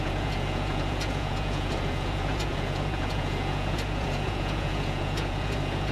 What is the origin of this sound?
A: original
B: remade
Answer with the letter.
B